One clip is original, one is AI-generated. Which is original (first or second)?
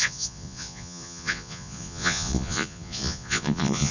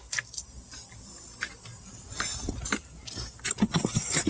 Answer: second